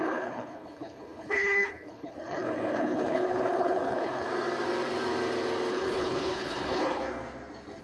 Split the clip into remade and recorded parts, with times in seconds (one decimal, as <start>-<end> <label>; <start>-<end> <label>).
0.0-4.3 remade; 4.3-5.7 recorded; 5.7-7.0 remade; 7.0-7.8 recorded